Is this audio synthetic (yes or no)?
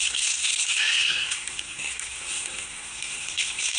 yes